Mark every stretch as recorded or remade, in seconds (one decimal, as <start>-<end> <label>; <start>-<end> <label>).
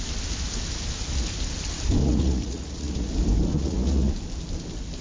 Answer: 0.0-2.0 recorded; 2.0-3.1 remade; 3.1-3.5 recorded; 3.5-4.1 remade; 4.1-5.0 recorded